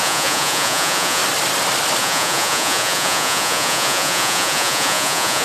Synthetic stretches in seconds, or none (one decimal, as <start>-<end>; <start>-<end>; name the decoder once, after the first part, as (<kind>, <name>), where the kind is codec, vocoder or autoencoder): 0.0-1.2 (vocoder, Vocos); 2.0-5.4